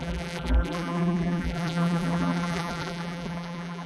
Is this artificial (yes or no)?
yes